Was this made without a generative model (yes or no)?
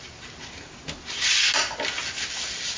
yes